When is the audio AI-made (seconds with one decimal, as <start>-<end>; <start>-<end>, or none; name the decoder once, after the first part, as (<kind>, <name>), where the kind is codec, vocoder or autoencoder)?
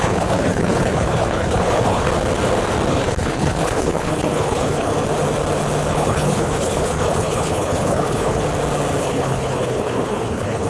0.0-2.1 (codec, HILCodec); 2.9-4.9; 5.9-8.4; 9.0-10.7